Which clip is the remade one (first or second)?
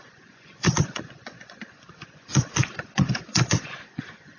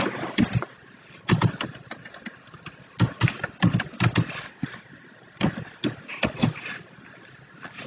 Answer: first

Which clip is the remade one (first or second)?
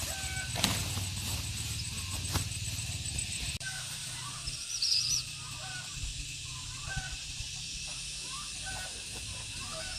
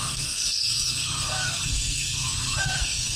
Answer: second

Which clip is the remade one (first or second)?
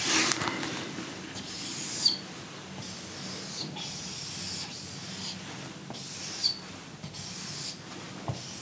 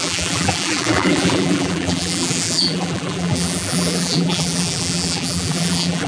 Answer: second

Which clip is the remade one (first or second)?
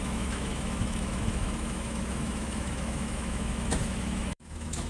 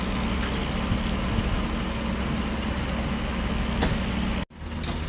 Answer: first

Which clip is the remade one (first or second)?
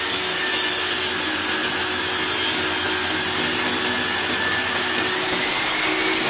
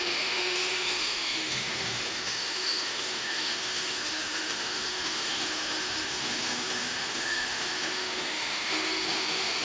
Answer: second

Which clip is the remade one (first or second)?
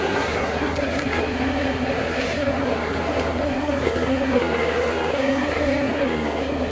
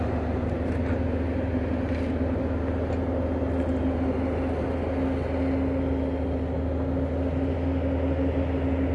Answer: first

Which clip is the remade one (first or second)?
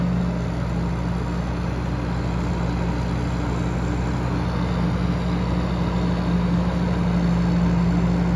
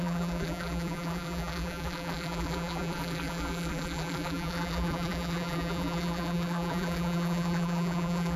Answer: second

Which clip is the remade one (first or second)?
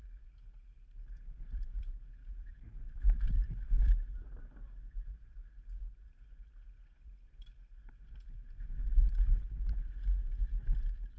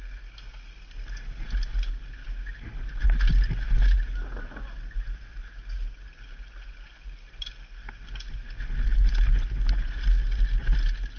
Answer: first